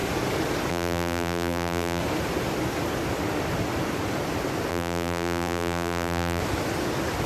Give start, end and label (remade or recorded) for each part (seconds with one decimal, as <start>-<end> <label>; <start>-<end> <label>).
0.0-0.7 recorded; 0.7-2.0 remade; 2.0-4.7 recorded; 4.7-6.4 remade; 6.4-7.3 recorded

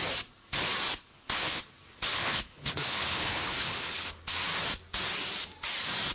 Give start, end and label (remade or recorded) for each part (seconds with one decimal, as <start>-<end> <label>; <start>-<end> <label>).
0.0-1.1 recorded; 1.1-1.6 remade; 1.6-2.1 recorded; 2.1-4.2 remade; 4.2-6.1 recorded

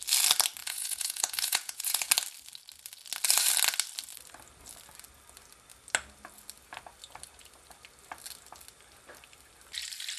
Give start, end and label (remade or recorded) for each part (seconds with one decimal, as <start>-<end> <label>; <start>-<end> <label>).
0.0-0.6 recorded; 0.6-2.1 remade; 2.1-10.2 recorded